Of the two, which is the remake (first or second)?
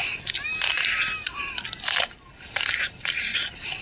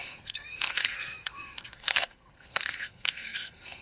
second